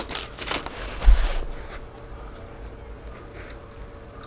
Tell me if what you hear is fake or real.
real